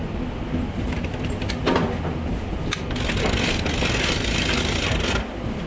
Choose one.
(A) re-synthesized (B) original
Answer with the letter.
B